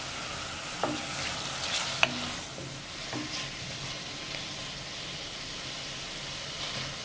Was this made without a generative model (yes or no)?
yes